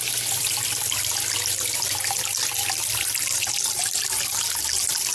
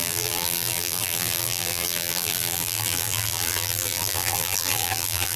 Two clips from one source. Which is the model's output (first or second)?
second